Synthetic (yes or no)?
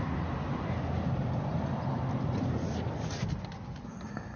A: no